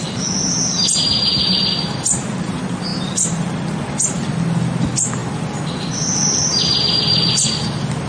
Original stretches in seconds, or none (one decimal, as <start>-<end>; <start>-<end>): 0.0-8.1